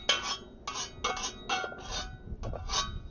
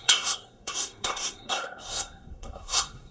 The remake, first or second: second